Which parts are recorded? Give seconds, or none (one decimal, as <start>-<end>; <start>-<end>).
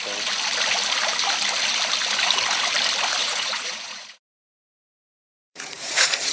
0.0-3.2